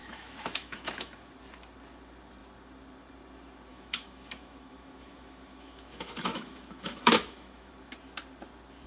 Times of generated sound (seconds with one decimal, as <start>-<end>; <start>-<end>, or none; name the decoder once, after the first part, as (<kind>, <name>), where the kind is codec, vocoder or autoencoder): 0.0-1.3 (autoencoder, DAC-VAE); 3.7-7.7